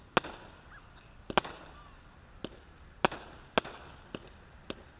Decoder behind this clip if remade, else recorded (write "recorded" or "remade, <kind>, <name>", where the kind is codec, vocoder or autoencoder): recorded